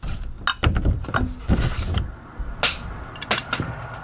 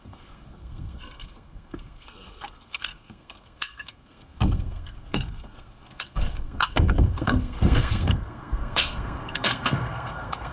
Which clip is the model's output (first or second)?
second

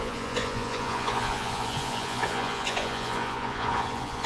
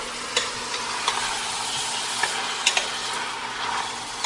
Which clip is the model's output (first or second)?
first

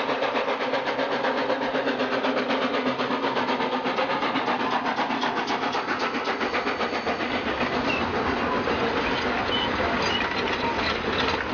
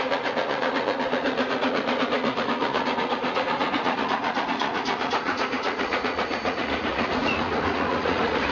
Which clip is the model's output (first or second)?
second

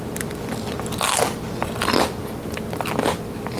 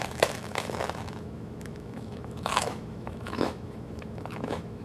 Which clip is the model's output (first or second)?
second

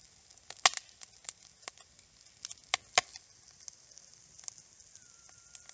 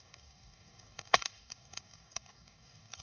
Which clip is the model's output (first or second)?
second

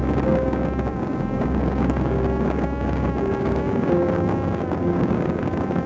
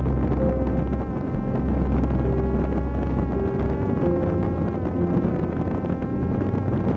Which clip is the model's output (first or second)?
first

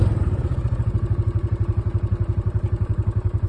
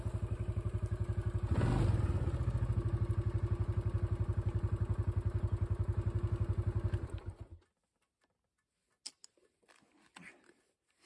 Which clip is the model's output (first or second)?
first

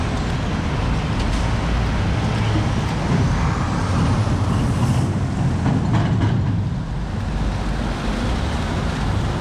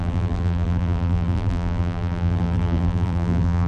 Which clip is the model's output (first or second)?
second